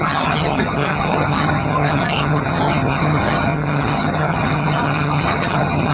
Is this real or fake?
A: fake